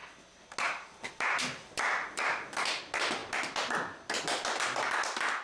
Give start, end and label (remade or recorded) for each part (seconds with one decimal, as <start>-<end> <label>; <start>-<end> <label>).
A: 0.0-1.1 recorded; 1.1-5.4 remade